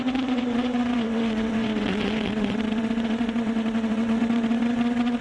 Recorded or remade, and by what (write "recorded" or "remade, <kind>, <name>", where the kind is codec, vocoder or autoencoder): remade, vocoder, WaveNeXt